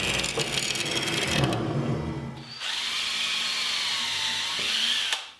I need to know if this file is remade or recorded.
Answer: recorded